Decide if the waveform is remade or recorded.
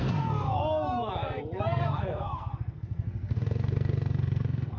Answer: remade